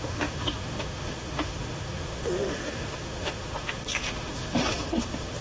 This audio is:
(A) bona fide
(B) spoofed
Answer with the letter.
B